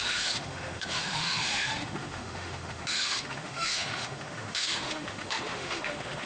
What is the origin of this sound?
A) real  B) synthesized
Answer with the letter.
B